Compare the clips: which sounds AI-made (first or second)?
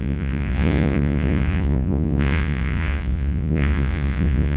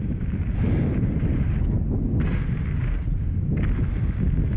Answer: first